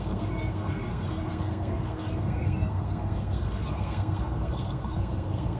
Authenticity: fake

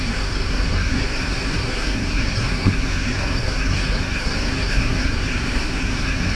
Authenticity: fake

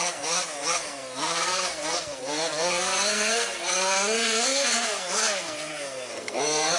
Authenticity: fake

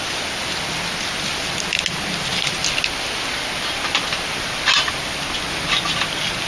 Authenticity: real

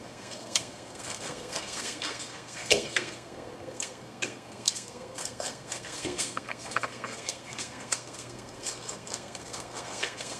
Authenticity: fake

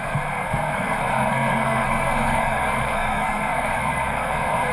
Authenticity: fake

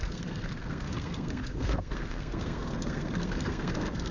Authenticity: fake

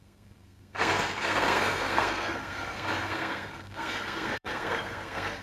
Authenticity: fake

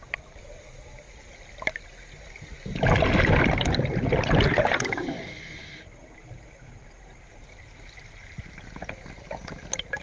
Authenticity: real